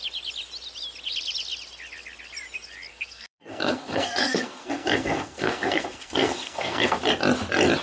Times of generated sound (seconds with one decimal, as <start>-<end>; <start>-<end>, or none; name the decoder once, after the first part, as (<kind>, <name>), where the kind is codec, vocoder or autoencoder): 2.9-7.0 (codec, SNAC)